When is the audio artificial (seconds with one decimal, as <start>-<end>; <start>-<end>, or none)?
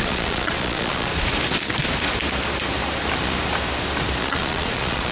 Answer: 0.0-1.1; 4.2-5.1